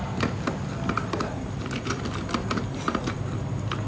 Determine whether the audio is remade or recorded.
recorded